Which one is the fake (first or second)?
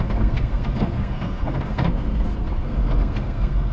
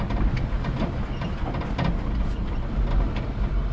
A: first